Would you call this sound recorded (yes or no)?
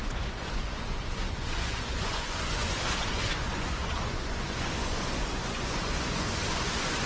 no